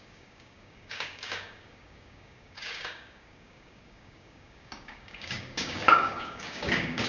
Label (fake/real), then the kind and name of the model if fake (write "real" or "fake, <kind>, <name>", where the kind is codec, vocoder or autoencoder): fake, codec, DAC